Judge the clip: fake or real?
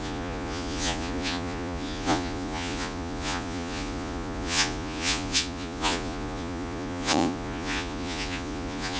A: fake